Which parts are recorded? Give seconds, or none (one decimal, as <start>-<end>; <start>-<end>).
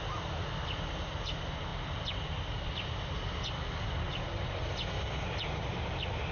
0.0-6.3